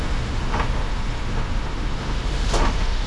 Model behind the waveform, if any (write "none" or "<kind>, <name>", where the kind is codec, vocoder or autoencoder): autoencoder, DAC-VAE